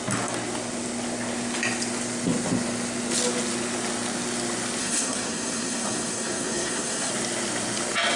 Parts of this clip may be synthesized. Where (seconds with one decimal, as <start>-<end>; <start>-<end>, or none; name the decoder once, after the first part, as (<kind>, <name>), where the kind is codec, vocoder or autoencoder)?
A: 4.8-7.1 (codec, SNAC)